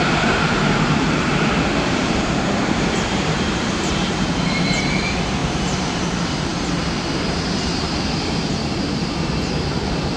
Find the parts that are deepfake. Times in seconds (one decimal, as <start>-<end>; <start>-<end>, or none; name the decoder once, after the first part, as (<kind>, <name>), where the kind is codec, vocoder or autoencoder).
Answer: 0.0-6.5 (vocoder, BigVGAN v2); 7.6-10.2